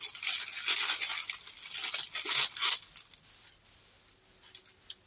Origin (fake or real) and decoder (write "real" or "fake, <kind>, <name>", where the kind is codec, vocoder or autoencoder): real